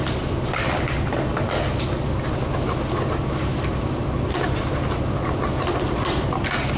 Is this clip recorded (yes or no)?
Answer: yes